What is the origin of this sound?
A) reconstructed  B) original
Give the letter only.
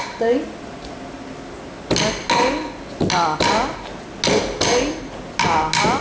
B